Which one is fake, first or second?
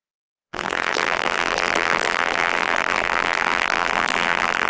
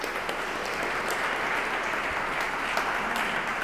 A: first